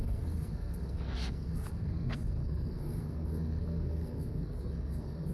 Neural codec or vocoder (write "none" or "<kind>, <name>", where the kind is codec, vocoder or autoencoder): codec, SNAC